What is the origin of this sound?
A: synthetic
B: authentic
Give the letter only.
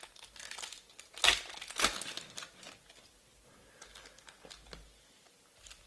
B